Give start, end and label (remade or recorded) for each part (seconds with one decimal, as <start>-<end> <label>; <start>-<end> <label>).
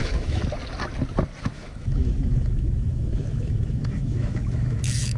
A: 0.0-0.4 remade; 0.4-1.4 recorded; 1.4-5.2 remade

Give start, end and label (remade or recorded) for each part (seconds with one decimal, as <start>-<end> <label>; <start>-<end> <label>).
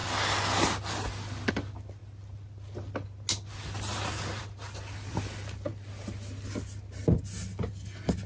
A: 0.0-8.3 recorded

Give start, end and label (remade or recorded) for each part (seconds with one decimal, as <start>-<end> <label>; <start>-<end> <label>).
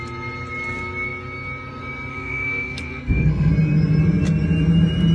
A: 0.0-2.1 recorded; 2.1-3.5 remade; 3.5-5.1 recorded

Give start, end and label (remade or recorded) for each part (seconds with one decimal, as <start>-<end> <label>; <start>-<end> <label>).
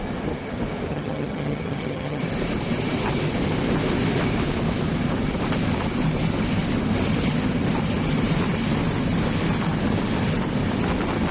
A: 0.0-0.9 recorded; 0.9-2.2 remade; 2.2-11.3 recorded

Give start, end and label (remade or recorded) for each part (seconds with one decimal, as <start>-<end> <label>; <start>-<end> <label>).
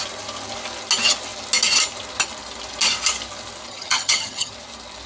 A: 0.0-3.7 recorded; 3.7-4.5 remade; 4.5-5.1 recorded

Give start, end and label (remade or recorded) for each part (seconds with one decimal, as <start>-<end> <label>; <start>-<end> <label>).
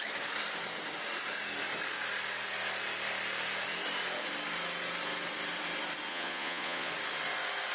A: 0.0-6.1 recorded; 6.1-6.9 remade; 6.9-7.7 recorded